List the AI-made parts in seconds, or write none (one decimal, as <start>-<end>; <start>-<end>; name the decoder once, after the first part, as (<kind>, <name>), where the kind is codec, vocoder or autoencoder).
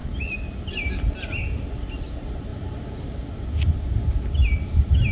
none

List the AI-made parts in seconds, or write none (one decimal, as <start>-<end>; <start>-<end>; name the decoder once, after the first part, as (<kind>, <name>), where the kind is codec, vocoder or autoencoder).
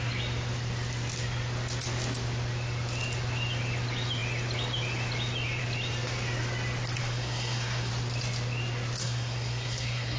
7.0-7.9 (codec, SNAC); 9.0-10.2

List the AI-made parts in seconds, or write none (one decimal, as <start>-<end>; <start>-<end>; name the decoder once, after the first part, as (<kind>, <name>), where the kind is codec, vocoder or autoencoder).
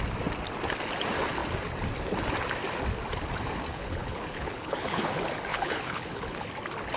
3.7-5.1 (codec, HILCodec); 5.5-6.5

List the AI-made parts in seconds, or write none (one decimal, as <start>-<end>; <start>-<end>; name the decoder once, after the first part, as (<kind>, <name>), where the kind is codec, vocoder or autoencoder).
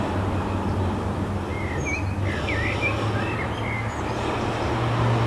none